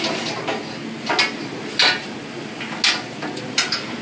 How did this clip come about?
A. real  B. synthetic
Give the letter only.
A